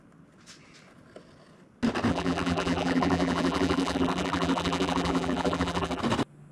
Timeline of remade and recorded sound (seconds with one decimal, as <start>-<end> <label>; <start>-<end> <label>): 0.0-2.1 recorded; 2.1-6.0 remade; 6.0-6.5 recorded